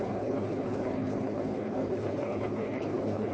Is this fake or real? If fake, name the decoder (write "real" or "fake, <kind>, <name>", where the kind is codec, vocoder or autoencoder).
fake, codec, HILCodec